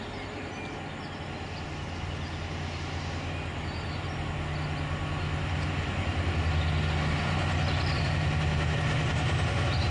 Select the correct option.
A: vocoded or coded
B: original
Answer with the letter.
B